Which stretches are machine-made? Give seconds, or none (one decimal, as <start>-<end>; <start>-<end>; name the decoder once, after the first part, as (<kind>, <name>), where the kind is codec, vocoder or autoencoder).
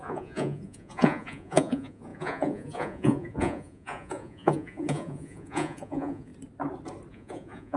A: 0.0-6.3 (vocoder, Vocos); 7.1-7.8